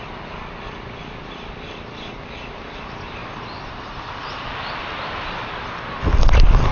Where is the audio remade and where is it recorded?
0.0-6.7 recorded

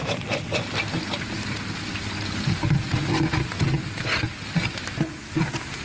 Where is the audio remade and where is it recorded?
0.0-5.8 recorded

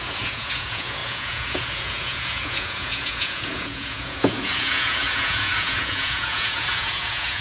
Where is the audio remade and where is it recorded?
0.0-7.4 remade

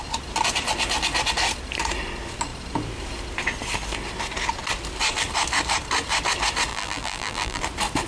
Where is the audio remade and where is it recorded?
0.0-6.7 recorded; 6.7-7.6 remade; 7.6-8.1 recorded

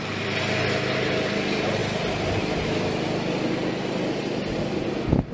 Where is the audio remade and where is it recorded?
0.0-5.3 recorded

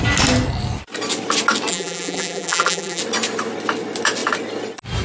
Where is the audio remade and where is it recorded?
0.0-1.7 recorded; 1.7-3.0 remade; 3.0-5.0 recorded